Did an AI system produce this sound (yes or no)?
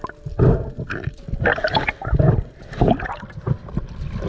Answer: no